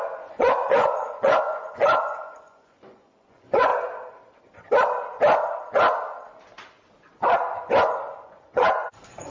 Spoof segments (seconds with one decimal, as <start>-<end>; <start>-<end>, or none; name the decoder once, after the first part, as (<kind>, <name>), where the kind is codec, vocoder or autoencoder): 0.0-3.7 (vocoder, Vocos); 8.2-9.3